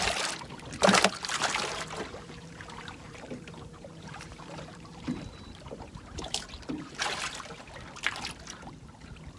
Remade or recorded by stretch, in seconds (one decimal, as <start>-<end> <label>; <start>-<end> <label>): 0.0-2.1 recorded; 2.1-7.2 remade; 7.2-9.4 recorded